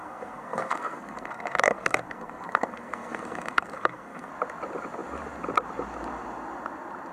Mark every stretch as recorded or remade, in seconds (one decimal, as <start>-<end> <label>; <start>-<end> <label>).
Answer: 0.0-4.3 remade; 4.3-7.1 recorded